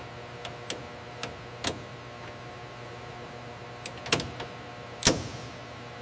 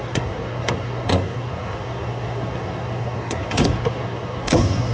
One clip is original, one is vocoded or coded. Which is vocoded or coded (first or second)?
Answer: second